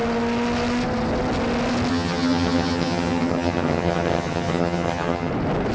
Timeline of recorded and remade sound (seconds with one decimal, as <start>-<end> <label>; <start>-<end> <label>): 0.0-1.9 recorded; 1.9-5.3 remade; 5.3-5.7 recorded